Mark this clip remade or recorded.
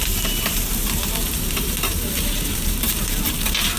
remade